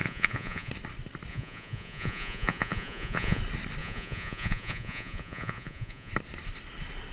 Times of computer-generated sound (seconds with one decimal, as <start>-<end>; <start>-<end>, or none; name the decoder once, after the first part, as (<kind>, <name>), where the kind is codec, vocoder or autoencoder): 0.0-0.7 (vocoder, Vocos); 1.3-3.4; 3.8-6.1